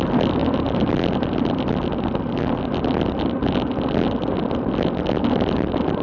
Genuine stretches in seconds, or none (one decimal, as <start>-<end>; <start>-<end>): 0.0-6.0